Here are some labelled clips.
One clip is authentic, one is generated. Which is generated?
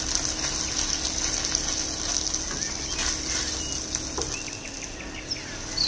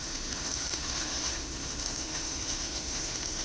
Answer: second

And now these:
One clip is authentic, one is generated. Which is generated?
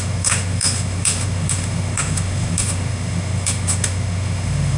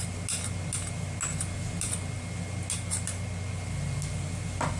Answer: first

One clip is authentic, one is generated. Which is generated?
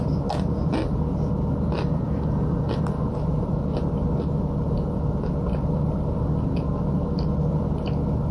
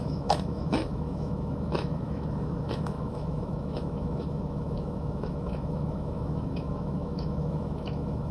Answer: second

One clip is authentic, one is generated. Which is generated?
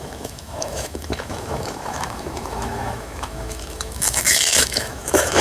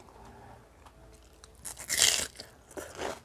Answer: first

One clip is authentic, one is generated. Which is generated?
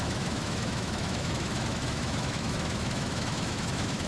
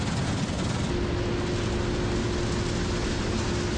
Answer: first